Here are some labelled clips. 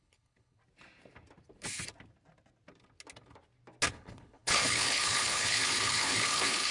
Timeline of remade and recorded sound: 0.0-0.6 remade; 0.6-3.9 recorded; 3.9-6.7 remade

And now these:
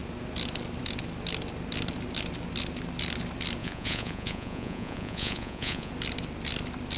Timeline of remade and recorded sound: 0.0-3.6 recorded; 3.6-5.9 remade; 5.9-7.0 recorded

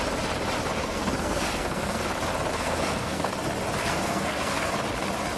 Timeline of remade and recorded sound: 0.0-0.8 recorded; 0.8-2.0 remade; 2.0-2.5 recorded; 2.5-3.3 remade; 3.3-3.8 recorded; 3.8-4.7 remade; 4.7-5.4 recorded

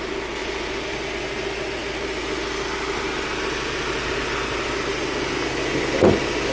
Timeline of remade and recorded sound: 0.0-6.5 recorded